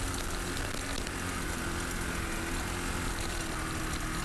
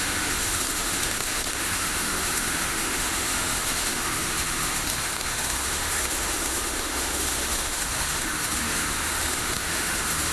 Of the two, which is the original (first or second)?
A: first